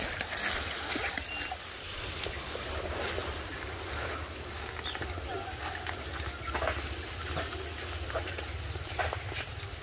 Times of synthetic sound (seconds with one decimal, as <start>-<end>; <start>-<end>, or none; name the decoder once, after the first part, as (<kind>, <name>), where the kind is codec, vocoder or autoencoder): none